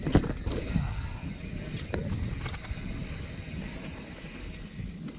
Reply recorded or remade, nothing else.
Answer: recorded